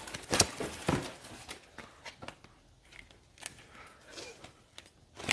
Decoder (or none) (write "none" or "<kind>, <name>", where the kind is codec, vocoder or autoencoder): none